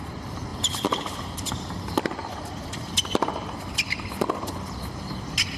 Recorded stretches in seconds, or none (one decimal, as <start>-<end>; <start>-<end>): 0.0-0.5; 1.7-5.6